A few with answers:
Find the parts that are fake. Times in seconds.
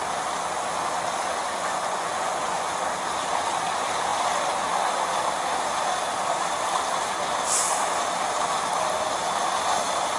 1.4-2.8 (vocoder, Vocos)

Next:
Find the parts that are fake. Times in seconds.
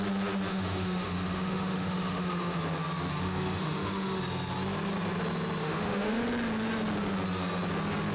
0.5-2.6 (autoencoder, DAC-VAE); 3.1-4.2; 5.6-6.2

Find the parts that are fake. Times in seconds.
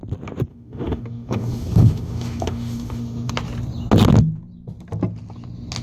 0.5-3.3 (autoencoder, DAC-VAE)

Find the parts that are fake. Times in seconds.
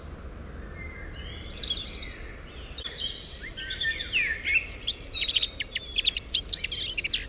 4.8-6.4 (vocoder, BigVGAN v2)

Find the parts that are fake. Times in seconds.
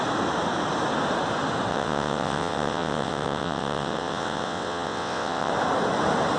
1.7-5.5 (vocoder, WaveNeXt)